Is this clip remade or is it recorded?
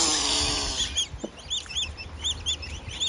recorded